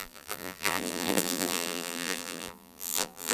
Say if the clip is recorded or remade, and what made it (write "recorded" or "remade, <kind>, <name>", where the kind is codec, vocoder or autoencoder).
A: remade, vocoder, BigVGAN v2